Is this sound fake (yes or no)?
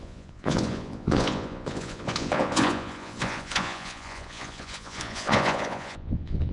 yes